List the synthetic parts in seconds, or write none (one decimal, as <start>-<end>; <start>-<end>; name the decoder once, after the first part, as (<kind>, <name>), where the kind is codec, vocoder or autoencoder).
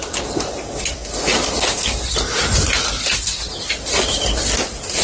none